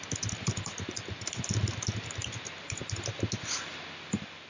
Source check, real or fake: real